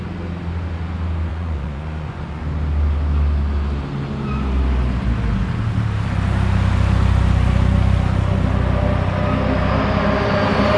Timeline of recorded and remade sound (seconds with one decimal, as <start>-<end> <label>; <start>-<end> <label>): 0.0-1.3 recorded; 1.3-2.4 remade; 2.4-10.8 recorded